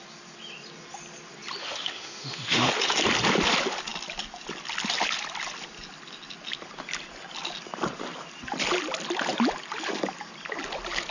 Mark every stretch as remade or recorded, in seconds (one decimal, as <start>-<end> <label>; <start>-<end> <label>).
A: 0.0-1.6 recorded; 1.6-2.7 remade; 2.7-11.1 recorded